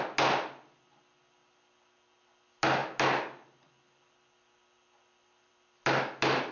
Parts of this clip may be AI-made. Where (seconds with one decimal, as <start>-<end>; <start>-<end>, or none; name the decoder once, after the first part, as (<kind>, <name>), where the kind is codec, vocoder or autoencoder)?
none